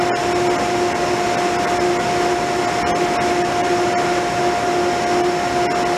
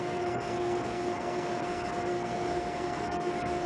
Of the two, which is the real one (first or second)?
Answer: first